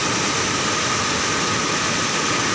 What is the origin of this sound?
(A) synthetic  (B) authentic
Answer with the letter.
B